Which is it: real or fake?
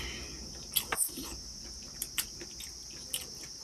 real